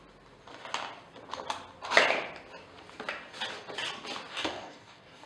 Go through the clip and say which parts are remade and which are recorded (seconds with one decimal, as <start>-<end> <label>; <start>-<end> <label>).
0.0-4.3 recorded; 4.3-5.3 remade